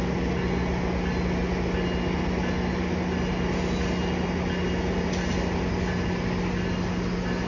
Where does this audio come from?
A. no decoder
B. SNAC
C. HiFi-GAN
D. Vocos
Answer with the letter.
A